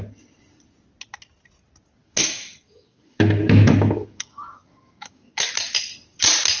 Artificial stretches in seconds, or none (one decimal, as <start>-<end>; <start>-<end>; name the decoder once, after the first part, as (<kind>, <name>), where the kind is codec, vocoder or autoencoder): 2.0-5.5 (autoencoder, DAC-VAE)